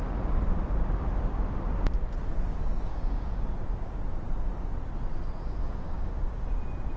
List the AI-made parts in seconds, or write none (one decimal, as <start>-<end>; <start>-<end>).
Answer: 2.9-3.4; 5.6-6.1